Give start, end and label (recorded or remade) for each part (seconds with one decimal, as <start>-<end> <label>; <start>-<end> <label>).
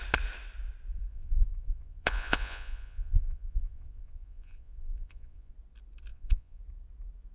0.0-1.1 recorded; 1.1-5.5 remade; 5.5-6.1 recorded; 6.1-6.6 remade; 6.6-7.3 recorded